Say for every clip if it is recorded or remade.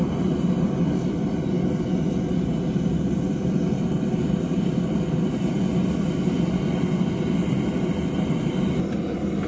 recorded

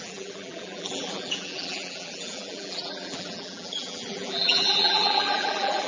remade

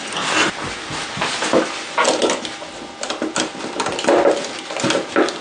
recorded